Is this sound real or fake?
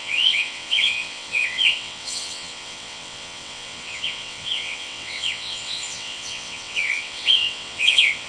fake